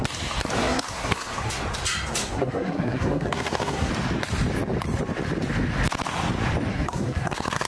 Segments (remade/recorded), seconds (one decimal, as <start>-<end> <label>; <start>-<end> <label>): 0.0-0.6 recorded; 0.6-1.5 remade; 1.5-2.2 recorded; 2.2-3.9 remade; 3.9-6.7 recorded; 6.7-7.7 remade